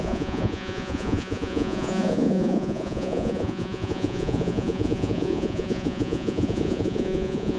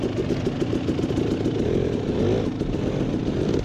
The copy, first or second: first